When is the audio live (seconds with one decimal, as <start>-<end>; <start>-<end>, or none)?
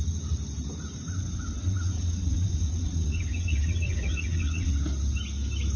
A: 0.0-1.2; 4.7-5.8